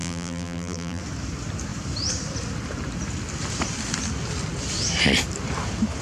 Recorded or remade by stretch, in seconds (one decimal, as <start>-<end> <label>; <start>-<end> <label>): 0.0-1.0 remade; 1.0-6.0 recorded